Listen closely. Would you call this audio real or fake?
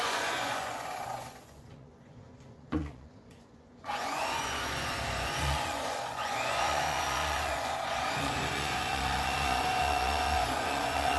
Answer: fake